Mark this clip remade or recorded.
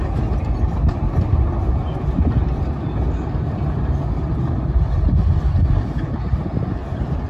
recorded